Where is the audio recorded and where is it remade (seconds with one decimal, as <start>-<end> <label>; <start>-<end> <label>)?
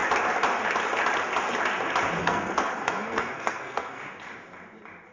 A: 0.0-2.2 recorded; 2.2-4.0 remade; 4.0-5.1 recorded